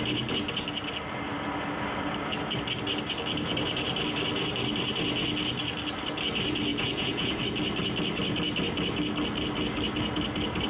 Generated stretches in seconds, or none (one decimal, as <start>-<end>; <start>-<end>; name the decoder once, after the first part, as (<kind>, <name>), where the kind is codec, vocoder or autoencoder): 6.7-7.4 (vocoder, Vocos)